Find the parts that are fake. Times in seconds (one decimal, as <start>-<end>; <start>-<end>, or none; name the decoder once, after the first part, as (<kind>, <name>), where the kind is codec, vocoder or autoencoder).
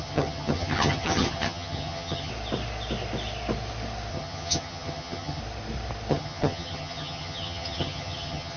0.0-2.3 (vocoder, HiFi-GAN); 4.1-5.4; 6.1-8.6